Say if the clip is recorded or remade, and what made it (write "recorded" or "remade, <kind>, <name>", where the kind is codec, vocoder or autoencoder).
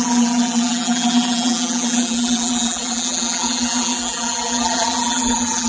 remade, vocoder, BigVGAN v2